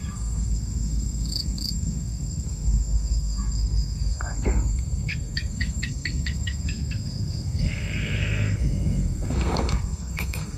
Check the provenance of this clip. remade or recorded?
remade